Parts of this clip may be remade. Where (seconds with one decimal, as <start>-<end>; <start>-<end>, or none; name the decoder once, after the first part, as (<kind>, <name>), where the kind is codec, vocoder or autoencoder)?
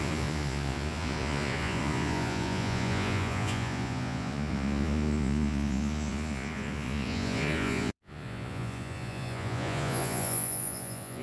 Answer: 0.0-11.2 (vocoder, Vocos)